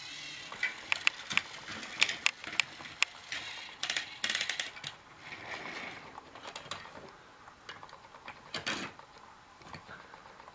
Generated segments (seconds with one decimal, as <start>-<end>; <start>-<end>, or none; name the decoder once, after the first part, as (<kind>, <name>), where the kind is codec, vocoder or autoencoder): none